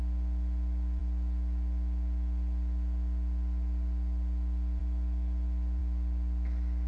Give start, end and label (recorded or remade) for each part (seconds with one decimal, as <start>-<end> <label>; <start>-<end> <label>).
0.0-6.9 recorded